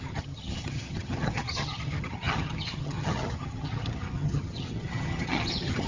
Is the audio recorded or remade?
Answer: remade